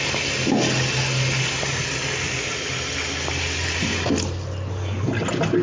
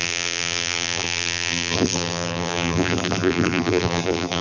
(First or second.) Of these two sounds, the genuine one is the first